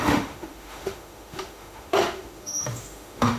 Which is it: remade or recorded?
remade